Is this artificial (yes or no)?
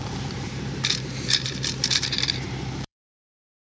yes